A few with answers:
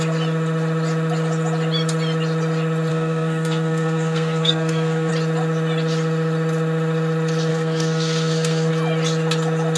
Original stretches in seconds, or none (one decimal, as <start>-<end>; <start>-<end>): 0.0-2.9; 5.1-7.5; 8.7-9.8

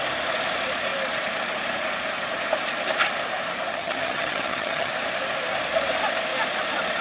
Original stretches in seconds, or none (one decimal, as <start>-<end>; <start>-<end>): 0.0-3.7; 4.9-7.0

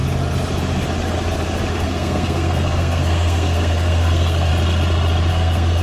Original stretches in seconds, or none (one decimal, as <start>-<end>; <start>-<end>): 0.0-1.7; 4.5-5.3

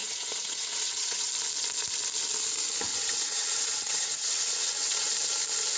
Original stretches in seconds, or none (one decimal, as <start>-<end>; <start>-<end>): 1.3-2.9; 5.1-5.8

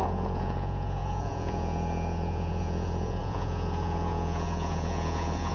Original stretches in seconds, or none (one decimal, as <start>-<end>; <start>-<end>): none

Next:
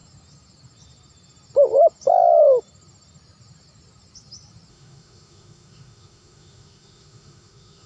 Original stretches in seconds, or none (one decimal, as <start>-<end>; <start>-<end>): 0.0-4.7

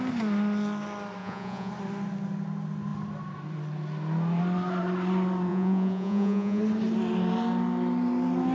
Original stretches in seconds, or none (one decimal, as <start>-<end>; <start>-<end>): 0.0-1.2; 1.7-5.5; 6.6-8.5

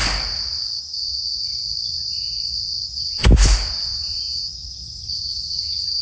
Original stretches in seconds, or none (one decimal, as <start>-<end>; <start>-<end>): 0.0-0.8; 1.6-3.7